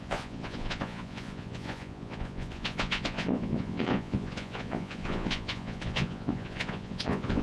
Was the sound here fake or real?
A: fake